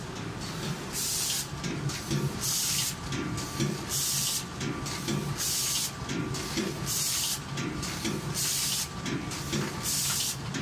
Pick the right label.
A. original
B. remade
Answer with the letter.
A